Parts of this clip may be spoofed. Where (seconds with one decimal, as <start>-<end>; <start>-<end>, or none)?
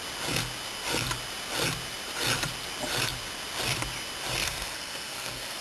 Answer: 4.4-5.6